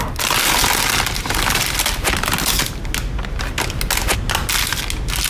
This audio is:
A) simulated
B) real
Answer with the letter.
B